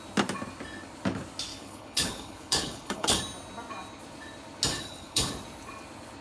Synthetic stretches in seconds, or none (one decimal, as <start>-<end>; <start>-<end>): 1.5-3.2; 4.7-5.3